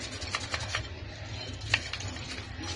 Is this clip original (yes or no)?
yes